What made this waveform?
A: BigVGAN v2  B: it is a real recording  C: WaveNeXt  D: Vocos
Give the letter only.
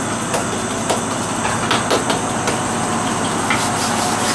B